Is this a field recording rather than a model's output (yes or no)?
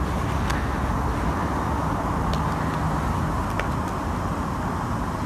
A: yes